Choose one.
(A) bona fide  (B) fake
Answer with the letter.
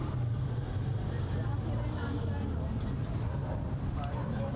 A